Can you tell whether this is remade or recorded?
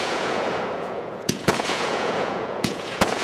remade